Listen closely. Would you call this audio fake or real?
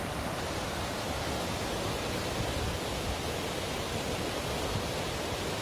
real